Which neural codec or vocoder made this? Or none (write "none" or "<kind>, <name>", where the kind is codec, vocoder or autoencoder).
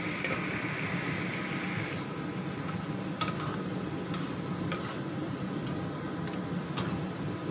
none